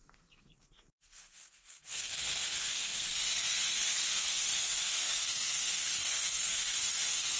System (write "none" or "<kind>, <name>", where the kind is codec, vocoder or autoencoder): codec, SNAC